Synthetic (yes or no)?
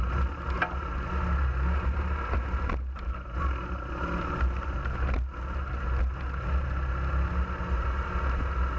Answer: no